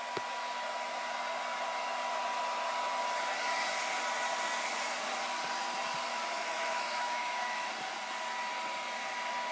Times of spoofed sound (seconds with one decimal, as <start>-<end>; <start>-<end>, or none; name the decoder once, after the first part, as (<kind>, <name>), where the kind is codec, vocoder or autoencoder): 6.1-7.7 (autoencoder, DAC-VAE)